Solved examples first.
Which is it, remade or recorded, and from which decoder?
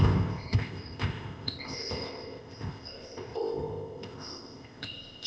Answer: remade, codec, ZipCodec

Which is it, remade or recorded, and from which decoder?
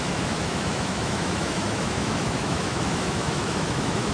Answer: remade, autoencoder, DAC-VAE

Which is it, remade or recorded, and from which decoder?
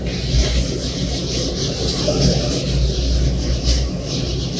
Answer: recorded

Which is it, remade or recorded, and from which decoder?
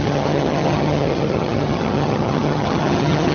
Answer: remade, vocoder, HiFi-GAN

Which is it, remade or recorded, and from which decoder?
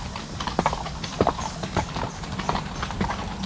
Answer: recorded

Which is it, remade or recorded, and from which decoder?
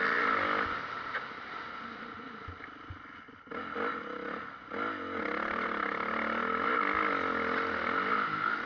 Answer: recorded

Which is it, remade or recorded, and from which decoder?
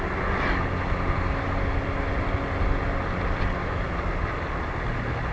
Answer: recorded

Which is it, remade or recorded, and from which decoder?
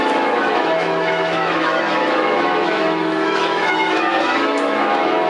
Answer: remade, autoencoder, DAC-VAE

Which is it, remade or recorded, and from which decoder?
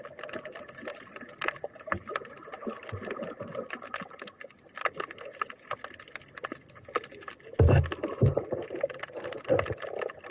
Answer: recorded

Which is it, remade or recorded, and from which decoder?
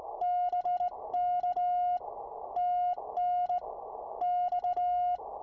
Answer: recorded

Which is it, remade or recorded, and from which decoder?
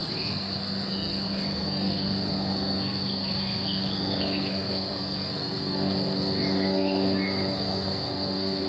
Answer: remade, codec, SNAC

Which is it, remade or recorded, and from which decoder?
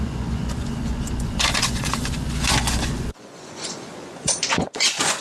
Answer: remade, vocoder, Vocos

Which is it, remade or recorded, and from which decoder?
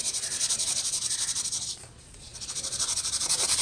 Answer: remade, vocoder, Vocos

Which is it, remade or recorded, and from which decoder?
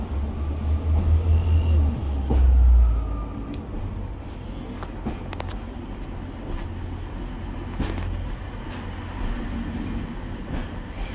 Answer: recorded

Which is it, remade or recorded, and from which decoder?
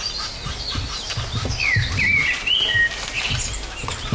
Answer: recorded